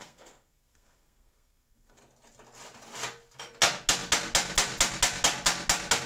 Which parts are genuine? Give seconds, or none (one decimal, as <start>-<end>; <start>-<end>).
2.0-6.1